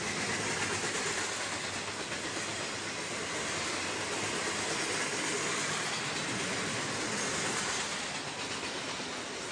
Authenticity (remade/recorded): recorded